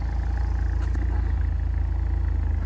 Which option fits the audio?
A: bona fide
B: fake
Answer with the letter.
A